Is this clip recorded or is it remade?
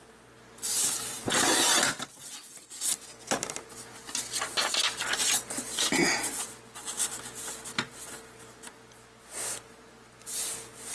recorded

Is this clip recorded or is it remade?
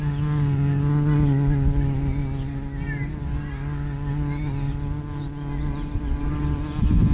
recorded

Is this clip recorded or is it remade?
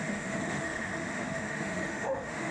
remade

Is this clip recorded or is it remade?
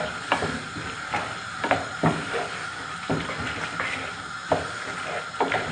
recorded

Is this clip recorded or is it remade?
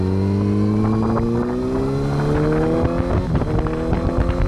recorded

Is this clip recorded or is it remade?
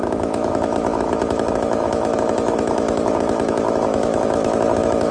remade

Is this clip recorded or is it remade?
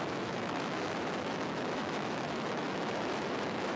remade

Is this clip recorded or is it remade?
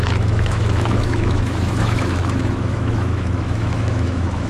remade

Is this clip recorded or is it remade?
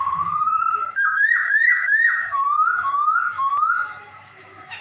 remade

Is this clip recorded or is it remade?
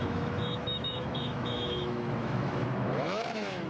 remade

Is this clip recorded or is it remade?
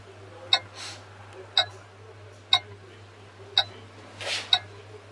recorded